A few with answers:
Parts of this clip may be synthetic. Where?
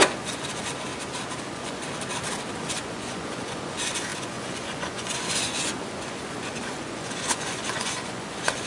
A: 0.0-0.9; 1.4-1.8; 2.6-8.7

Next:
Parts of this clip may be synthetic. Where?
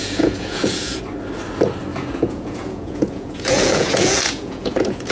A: 0.0-1.0; 1.9-5.1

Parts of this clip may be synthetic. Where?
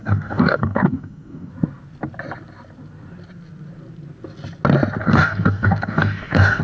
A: 0.0-1.5; 5.0-6.6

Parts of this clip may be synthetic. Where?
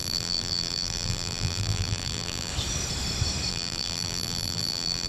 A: 0.0-2.5; 3.5-5.1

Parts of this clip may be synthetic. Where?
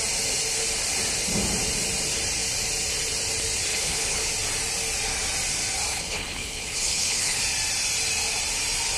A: 3.7-4.3; 5.9-7.4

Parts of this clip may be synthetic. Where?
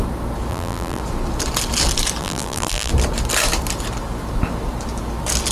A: 0.5-1.0; 2.2-2.9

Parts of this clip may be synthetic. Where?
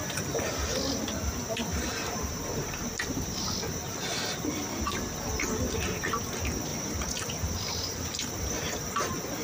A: 1.7-3.5; 6.7-8.9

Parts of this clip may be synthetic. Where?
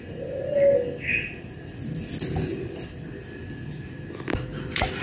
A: 1.1-1.8